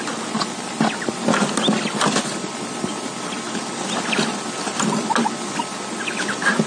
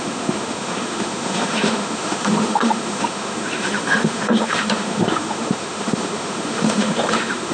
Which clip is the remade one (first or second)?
second